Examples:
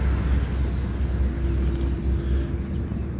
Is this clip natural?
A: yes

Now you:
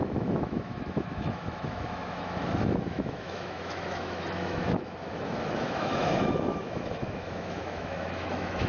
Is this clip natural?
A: no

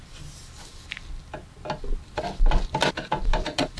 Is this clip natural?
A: yes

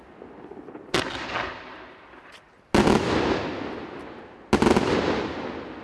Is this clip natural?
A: yes